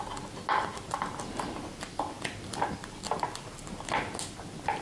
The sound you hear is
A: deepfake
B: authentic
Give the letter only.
B